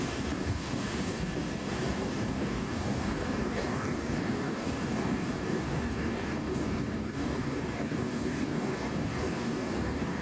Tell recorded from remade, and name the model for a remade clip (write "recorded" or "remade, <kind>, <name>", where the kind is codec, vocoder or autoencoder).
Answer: remade, codec, DAC